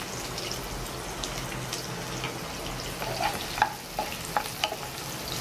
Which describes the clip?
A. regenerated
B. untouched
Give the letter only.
B